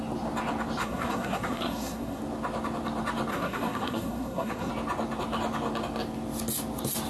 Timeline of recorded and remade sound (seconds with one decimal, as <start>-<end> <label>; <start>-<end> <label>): 0.0-0.8 recorded; 0.8-2.2 remade; 2.2-3.3 recorded; 3.3-4.7 remade; 4.7-7.1 recorded